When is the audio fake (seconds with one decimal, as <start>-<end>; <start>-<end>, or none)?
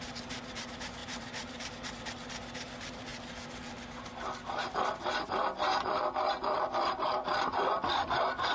0.0-3.1